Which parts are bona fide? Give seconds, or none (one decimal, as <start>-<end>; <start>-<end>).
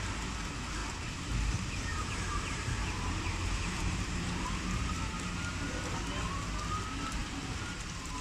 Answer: 0.0-1.9; 4.9-7.2